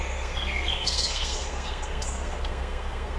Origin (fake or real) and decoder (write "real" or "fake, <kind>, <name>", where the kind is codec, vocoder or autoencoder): fake, codec, SNAC